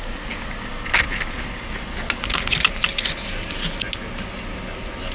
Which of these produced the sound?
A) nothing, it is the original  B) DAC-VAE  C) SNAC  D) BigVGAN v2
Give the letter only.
A